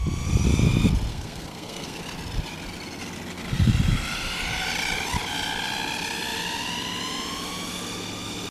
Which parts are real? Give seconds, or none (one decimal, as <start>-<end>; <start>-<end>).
0.0-1.1; 2.0-8.5